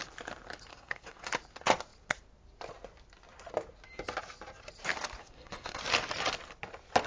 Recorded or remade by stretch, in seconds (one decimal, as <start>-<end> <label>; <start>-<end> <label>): 0.0-0.7 recorded; 0.7-1.3 remade; 1.3-5.2 recorded; 5.2-5.8 remade; 5.8-7.1 recorded